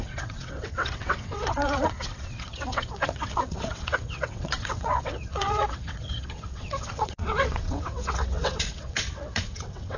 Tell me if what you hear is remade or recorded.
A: remade